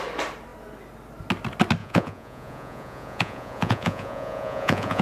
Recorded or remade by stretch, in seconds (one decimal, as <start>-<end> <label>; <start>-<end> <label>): 0.0-1.8 recorded; 1.8-5.0 remade